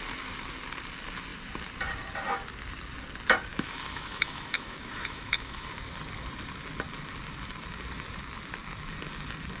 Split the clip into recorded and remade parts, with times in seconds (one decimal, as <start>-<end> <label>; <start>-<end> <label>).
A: 0.0-3.5 recorded; 3.5-5.7 remade; 5.7-9.6 recorded